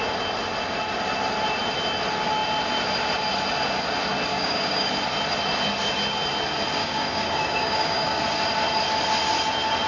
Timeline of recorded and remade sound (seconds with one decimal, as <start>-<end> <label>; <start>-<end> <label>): 0.0-4.3 recorded; 4.3-4.9 remade; 4.9-6.8 recorded; 6.8-8.2 remade; 8.2-9.9 recorded